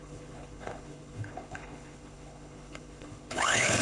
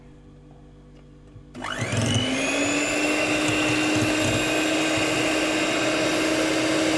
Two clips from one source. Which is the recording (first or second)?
second